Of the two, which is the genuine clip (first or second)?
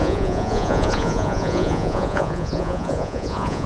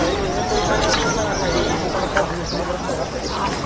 second